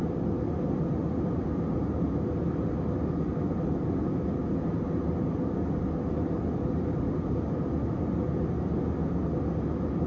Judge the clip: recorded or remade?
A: recorded